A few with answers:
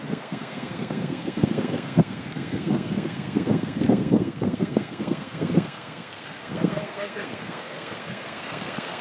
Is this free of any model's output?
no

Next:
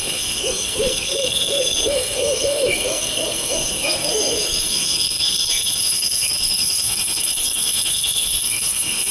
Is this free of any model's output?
no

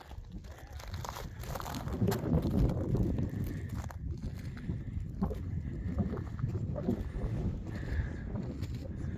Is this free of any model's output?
yes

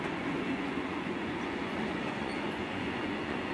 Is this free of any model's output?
no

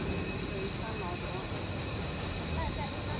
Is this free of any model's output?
yes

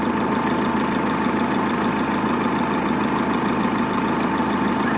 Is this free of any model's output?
yes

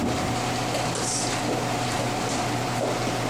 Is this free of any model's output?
yes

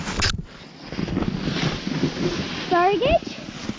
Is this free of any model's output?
yes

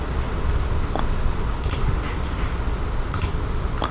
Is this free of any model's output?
yes